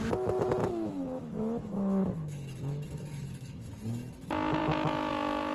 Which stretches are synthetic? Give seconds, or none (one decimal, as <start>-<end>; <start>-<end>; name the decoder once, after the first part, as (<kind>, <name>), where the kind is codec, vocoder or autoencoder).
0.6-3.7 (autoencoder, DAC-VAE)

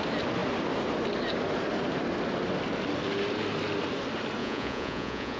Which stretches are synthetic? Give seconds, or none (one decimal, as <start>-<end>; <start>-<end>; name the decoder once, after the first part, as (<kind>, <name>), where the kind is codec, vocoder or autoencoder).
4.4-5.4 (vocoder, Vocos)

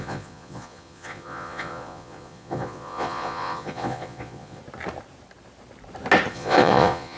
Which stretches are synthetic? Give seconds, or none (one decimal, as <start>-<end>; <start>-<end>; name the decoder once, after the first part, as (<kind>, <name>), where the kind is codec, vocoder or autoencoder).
0.0-4.6 (vocoder, Vocos); 6.3-7.2

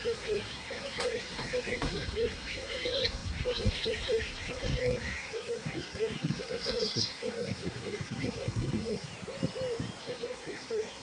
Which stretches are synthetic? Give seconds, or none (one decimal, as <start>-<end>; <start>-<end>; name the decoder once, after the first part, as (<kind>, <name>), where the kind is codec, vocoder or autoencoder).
0.0-9.1 (codec, SNAC); 10.0-11.0

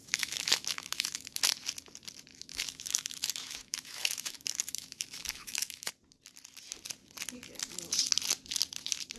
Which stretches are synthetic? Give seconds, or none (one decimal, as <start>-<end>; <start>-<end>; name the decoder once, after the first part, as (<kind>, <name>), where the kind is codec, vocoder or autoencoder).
0.0-1.4 (autoencoder, DAC-VAE); 2.3-5.9

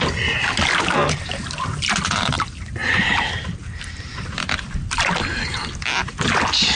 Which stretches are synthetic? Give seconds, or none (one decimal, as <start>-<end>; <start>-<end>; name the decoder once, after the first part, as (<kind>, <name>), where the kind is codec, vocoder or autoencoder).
none

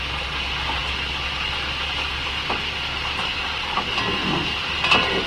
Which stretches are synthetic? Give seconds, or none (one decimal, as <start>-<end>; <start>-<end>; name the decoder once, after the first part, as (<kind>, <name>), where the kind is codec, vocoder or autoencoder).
0.8-3.8 (vocoder, BigVGAN v2); 4.4-5.3